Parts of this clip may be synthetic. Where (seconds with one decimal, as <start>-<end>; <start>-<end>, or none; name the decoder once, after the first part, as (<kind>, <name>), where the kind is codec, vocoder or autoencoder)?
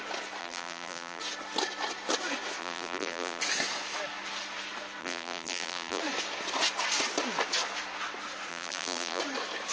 0.4-1.2 (vocoder, BigVGAN v2); 2.6-3.4; 5.0-6.0; 8.5-9.2